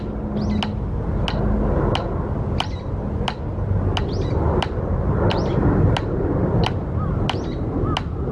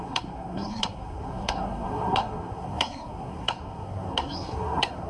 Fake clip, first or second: second